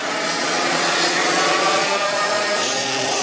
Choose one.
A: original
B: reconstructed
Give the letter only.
B